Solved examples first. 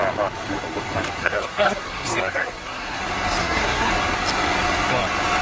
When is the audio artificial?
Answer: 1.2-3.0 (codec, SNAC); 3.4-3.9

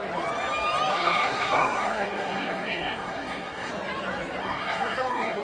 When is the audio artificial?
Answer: 0.9-3.7 (codec, SNAC); 4.4-5.4